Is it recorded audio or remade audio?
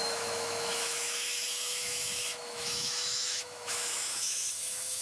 remade